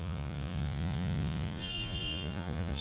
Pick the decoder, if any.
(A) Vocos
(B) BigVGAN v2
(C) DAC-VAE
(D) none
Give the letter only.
A